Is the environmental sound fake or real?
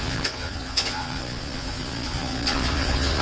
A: fake